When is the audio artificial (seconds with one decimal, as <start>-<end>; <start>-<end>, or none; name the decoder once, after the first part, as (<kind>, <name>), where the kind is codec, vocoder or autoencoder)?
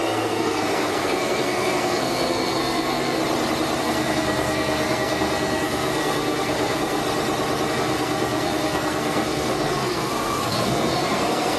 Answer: 0.0-3.2 (codec, SNAC); 3.8-7.0; 7.7-11.6